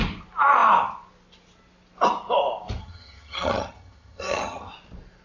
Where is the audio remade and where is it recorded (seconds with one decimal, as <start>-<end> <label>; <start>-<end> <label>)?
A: 0.0-2.8 recorded; 2.8-4.7 remade; 4.7-5.2 recorded